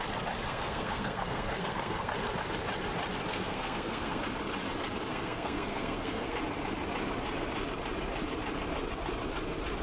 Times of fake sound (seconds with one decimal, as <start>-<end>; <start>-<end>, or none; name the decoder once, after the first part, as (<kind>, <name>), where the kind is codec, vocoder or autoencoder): 0.5-2.1 (codec, SNAC); 3.3-4.2; 5.1-6.4